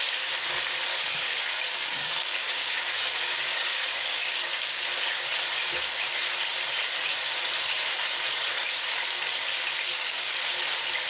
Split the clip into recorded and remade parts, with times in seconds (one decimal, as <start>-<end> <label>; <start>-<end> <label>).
0.0-0.9 recorded; 0.9-4.8 remade; 4.8-9.9 recorded; 9.9-10.4 remade; 10.4-11.1 recorded